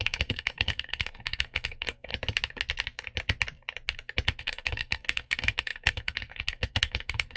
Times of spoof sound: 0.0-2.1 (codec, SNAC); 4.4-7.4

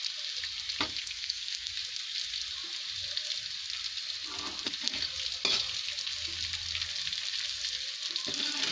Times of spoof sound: 1.0-1.7 (codec, SNAC)

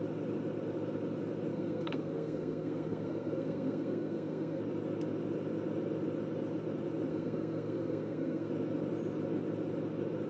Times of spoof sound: 1.5-4.6 (codec, SNAC); 7.1-8.5

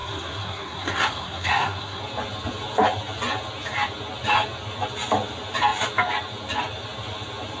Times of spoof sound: 0.0-2.0 (codec, SNAC)

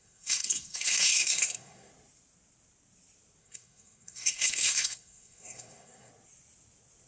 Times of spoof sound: 0.0-1.9 (codec, SNAC); 3.4-6.1

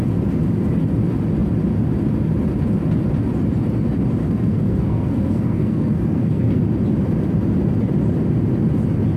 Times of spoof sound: 4.2-6.6 (codec, SNAC)

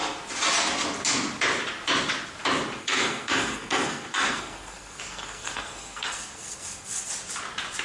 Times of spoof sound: 2.8-7.1 (codec, SNAC)

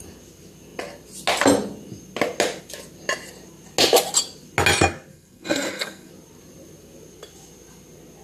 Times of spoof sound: 5.1-6.1 (codec, SNAC)